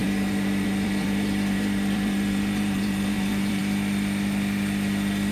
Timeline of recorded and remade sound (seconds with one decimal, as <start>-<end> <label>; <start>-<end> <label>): 0.0-3.6 remade; 3.6-5.3 recorded